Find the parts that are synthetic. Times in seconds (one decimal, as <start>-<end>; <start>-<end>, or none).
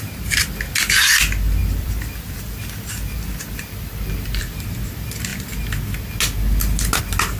1.6-4.4